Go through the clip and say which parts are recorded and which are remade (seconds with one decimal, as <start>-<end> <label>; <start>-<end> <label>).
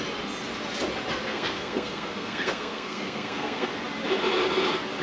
0.0-1.3 recorded; 1.3-3.7 remade; 3.7-5.0 recorded